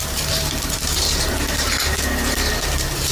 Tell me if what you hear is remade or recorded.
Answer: remade